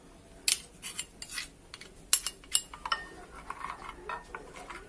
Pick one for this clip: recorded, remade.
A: recorded